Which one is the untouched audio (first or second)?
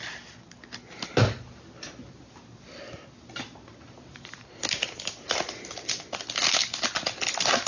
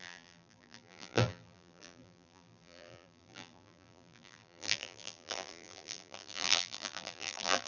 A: first